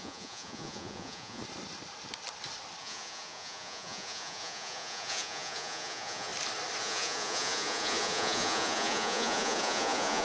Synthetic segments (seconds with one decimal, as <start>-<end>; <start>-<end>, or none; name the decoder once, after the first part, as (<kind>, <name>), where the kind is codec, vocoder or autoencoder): 0.0-1.4 (vocoder, Vocos); 2.8-6.3; 6.8-10.2